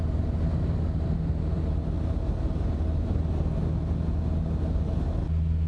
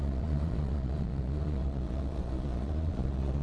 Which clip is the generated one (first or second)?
second